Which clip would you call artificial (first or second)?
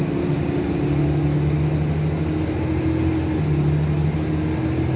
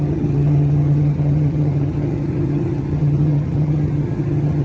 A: second